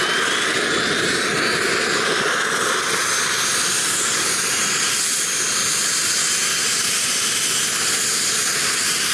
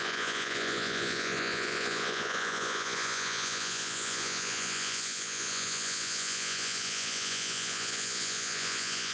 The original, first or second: first